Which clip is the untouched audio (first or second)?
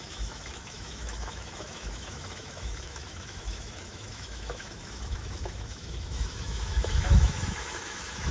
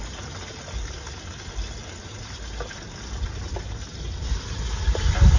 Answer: second